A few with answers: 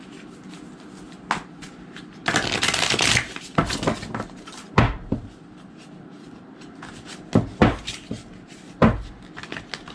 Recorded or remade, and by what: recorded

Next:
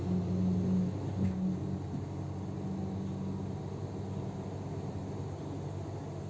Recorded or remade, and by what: recorded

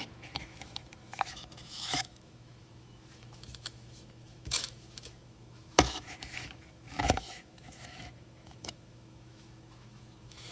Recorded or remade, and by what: remade, autoencoder, DAC-VAE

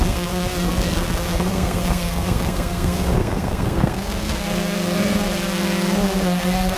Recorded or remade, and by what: remade, codec, SNAC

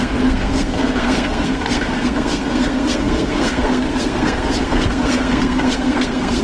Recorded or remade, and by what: remade, codec, SNAC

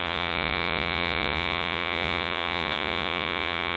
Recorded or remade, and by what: remade, vocoder, Vocos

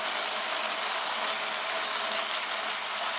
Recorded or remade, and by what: recorded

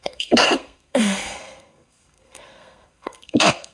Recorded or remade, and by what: remade, codec, SNAC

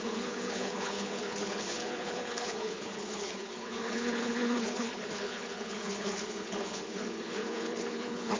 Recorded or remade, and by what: remade, codec, HILCodec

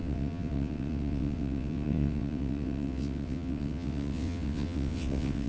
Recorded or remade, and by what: remade, vocoder, WaveNeXt